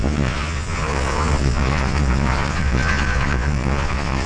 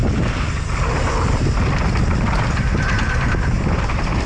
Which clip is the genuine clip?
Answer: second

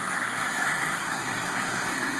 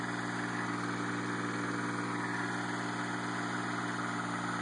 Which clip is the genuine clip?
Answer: second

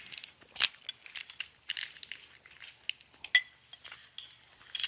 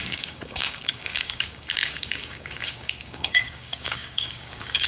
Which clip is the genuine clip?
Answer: first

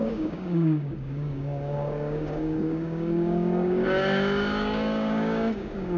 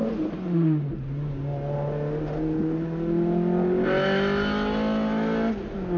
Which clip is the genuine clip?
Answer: second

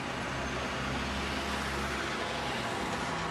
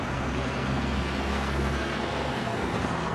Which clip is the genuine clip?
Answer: first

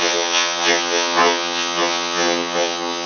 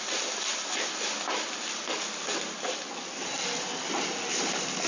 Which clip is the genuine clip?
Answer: second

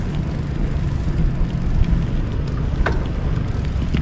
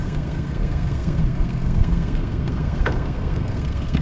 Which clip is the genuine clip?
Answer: first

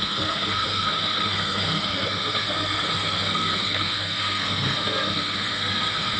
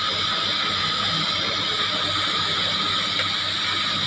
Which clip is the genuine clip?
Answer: second